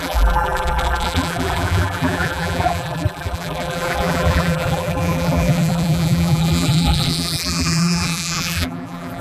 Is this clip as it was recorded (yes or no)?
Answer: no